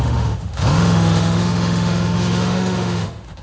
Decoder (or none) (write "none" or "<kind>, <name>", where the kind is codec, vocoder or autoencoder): autoencoder, DAC-VAE